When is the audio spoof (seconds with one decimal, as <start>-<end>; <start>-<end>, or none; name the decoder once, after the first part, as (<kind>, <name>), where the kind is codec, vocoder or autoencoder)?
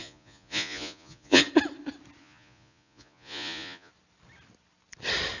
0.0-1.4 (vocoder, Vocos); 2.2-3.9